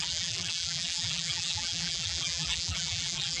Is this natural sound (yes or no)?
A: no